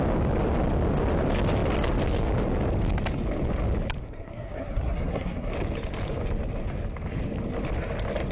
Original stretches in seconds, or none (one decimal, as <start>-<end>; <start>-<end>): 0.0-4.0; 5.5-8.3